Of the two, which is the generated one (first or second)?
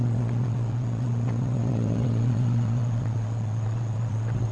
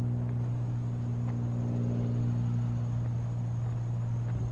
first